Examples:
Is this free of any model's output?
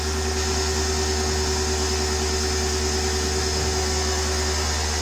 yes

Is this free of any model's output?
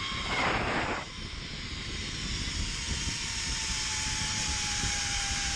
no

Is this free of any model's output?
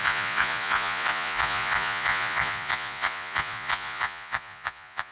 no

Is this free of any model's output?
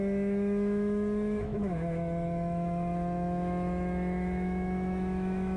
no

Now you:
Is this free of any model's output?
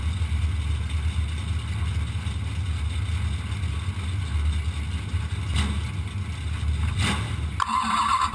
yes